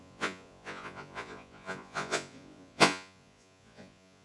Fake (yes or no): yes